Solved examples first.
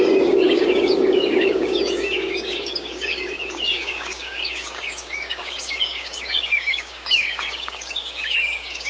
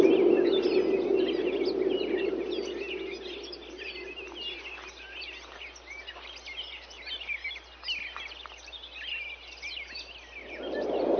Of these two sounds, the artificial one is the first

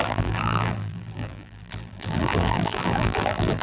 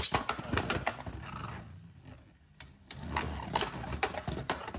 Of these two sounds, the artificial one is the first